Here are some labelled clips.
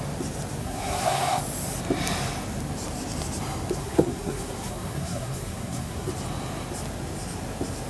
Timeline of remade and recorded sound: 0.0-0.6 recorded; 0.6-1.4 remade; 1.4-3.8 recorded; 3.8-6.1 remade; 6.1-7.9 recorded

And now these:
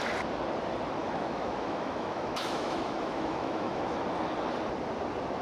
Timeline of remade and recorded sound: 0.0-1.0 recorded; 1.0-4.0 remade; 4.0-5.4 recorded

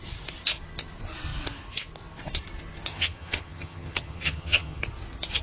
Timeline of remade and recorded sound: 0.0-2.9 recorded; 2.9-4.8 remade; 4.8-5.4 recorded

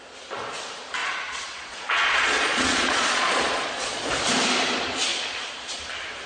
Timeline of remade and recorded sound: 0.0-1.0 recorded; 1.0-4.1 remade; 4.1-5.1 recorded; 5.1-5.8 remade; 5.8-6.3 recorded

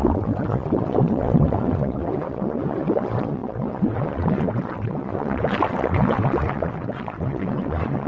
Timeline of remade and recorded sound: 0.0-8.1 remade

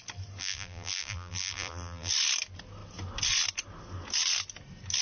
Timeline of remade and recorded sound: 0.0-0.4 recorded; 0.4-2.1 remade; 2.1-5.0 recorded

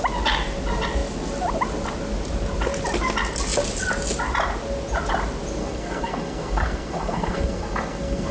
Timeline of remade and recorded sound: 0.0-5.6 recorded; 5.6-8.3 remade